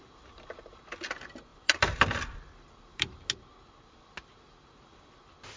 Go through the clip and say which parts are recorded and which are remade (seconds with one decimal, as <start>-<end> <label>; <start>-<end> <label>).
0.0-1.5 recorded; 1.5-3.3 remade; 3.3-5.6 recorded